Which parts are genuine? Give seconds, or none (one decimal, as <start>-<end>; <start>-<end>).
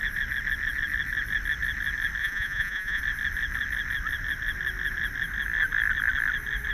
0.0-2.2; 3.0-6.7